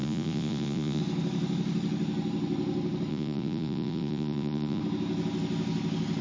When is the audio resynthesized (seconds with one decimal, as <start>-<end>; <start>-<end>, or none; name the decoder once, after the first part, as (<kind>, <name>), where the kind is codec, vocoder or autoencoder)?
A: 0.0-1.0 (vocoder, Vocos); 3.1-4.8